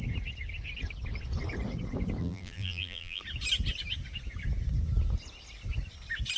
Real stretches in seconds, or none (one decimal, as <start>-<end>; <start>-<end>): 0.0-2.2; 3.2-6.4